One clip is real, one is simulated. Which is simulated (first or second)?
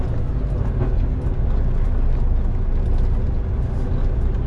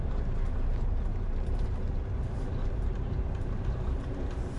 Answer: second